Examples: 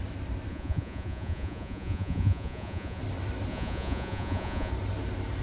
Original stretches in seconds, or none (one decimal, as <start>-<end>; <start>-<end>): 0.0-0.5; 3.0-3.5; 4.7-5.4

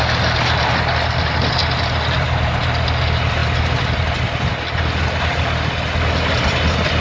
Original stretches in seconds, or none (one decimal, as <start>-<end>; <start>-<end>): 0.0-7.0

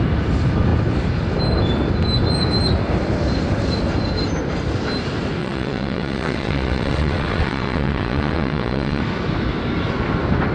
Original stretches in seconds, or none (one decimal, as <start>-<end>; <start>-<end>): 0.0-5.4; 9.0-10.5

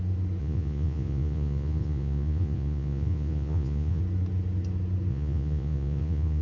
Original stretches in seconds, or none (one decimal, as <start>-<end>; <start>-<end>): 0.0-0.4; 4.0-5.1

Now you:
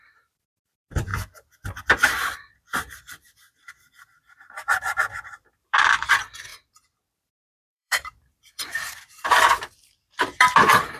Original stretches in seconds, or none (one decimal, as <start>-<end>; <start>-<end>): none

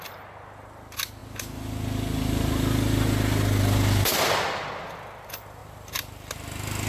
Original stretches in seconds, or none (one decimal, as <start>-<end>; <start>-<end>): 0.0-6.9

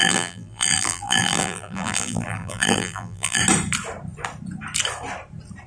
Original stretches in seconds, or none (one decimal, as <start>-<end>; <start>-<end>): 3.4-5.7

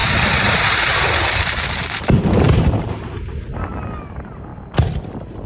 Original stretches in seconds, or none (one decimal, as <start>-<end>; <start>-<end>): 3.5-4.1; 4.5-5.5